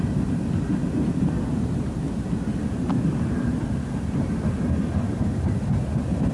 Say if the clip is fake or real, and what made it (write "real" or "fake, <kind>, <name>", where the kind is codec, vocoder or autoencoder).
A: real